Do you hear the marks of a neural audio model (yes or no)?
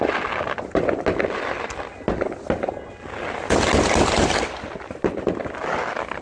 no